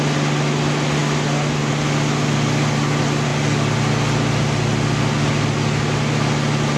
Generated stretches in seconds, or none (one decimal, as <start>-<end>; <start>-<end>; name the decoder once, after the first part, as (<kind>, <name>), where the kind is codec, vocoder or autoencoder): none